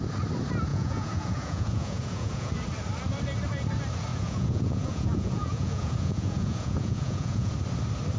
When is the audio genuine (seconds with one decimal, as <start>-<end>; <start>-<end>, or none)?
0.0-0.7; 2.5-4.1; 7.5-8.2